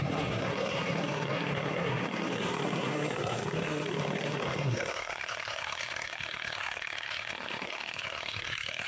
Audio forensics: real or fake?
fake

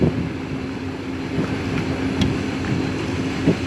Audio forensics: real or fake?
real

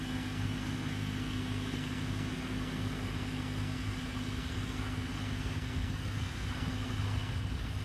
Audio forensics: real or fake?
fake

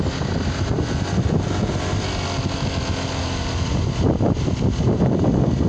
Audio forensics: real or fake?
real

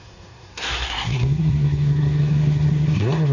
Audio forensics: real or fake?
fake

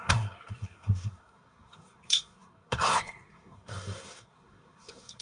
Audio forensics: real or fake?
fake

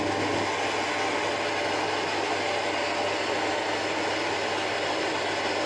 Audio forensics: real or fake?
real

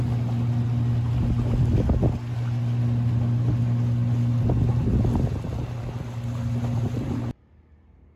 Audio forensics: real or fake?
real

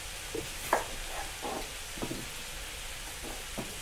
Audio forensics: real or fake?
real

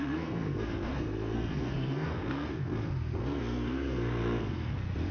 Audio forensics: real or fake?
fake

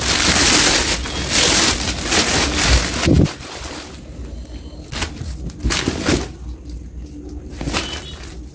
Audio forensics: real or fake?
real